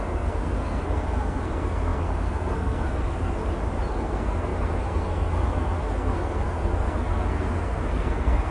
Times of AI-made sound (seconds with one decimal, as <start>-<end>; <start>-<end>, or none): 0.0-3.4; 3.9-8.5